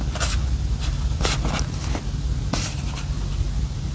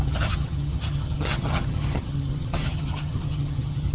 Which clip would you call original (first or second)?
first